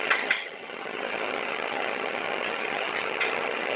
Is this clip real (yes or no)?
no